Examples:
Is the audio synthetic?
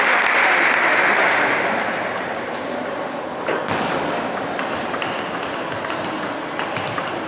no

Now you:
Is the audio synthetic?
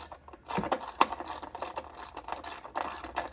no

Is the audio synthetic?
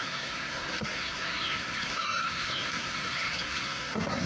yes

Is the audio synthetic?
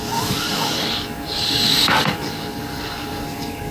yes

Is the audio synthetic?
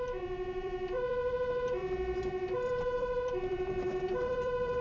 yes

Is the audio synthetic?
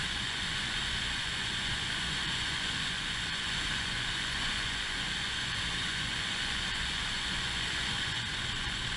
yes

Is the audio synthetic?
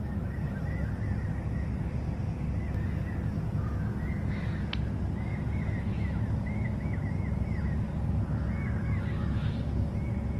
no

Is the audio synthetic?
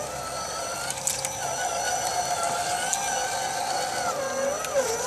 no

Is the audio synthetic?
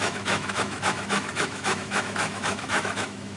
yes